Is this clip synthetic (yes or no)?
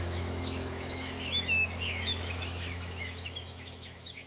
yes